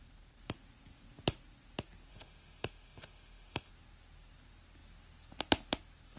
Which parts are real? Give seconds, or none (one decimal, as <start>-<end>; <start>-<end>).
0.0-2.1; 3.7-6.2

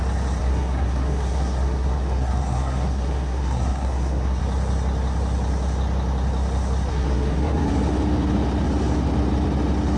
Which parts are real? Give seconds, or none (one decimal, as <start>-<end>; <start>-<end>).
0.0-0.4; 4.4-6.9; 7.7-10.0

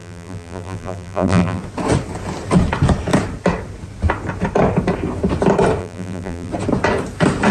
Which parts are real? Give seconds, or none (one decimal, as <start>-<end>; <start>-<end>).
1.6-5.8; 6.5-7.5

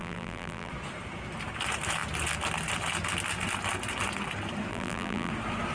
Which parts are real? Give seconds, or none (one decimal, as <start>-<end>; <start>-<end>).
0.7-4.7; 5.3-5.7

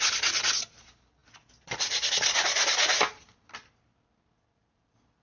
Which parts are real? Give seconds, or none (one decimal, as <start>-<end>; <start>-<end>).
0.0-5.2

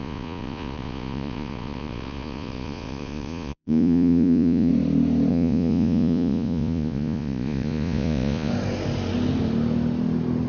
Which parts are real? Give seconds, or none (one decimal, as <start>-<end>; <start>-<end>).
4.7-5.3; 8.5-10.5

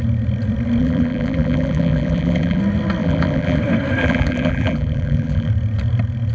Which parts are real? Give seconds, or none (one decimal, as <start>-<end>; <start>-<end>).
0.0-0.8; 2.6-3.0; 3.6-4.0; 5.5-6.3